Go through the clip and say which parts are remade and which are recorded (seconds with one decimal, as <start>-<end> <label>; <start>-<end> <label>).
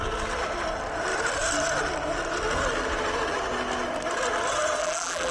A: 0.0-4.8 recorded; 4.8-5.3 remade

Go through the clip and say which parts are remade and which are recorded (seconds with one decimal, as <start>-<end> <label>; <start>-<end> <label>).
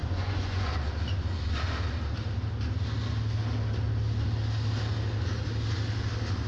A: 0.0-0.7 remade; 0.7-6.5 recorded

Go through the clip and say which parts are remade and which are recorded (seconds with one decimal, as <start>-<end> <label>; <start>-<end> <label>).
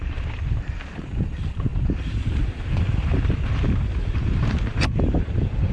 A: 0.0-5.7 remade